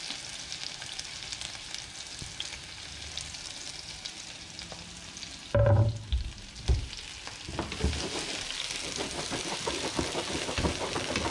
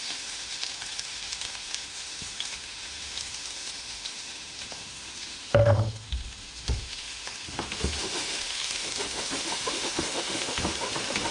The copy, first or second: second